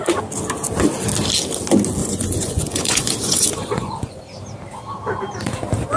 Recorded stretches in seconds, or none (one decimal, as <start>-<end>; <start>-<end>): 0.0-2.0; 4.2-6.0